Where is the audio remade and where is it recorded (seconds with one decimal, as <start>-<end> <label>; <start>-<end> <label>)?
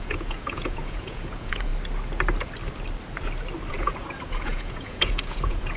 0.0-1.7 remade; 1.7-3.7 recorded; 3.7-5.8 remade